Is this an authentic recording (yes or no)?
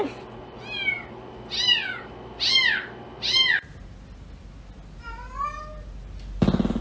yes